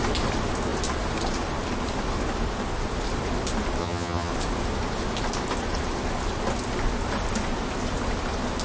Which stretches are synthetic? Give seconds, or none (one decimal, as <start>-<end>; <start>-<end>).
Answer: 3.8-4.3